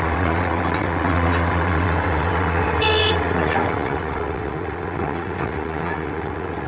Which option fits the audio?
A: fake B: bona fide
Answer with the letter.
A